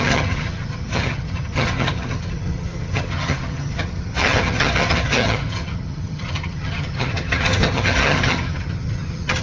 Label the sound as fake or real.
fake